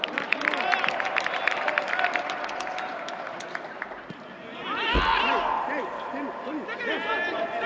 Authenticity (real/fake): real